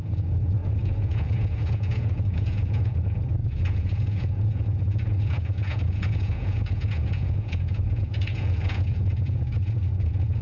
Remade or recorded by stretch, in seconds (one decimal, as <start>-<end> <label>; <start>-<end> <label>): 0.0-10.4 remade